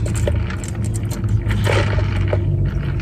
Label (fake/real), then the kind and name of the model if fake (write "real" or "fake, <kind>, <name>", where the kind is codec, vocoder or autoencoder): real